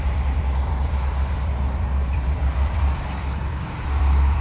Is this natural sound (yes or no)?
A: no